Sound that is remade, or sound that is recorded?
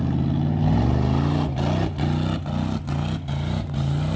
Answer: recorded